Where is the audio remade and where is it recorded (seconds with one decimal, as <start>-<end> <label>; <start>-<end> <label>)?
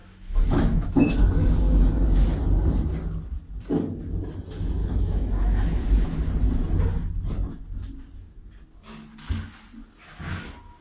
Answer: 0.0-1.3 remade; 1.3-4.8 recorded; 4.8-5.8 remade; 5.8-10.8 recorded